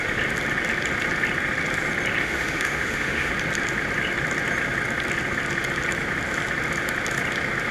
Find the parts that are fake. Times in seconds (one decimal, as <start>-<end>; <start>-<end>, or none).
2.2-3.3